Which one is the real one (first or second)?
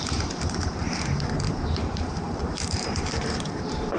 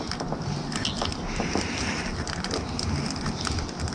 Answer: second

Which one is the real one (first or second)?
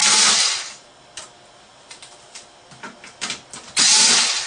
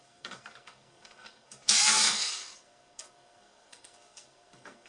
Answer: first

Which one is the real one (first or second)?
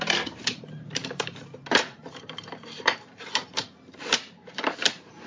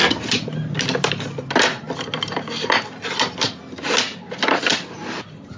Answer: second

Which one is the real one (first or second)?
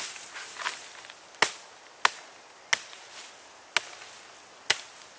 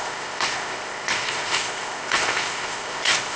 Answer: first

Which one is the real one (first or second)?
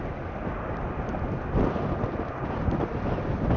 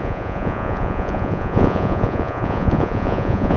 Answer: first